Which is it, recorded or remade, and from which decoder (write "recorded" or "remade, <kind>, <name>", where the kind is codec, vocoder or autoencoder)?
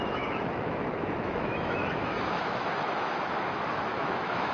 remade, autoencoder, DAC-VAE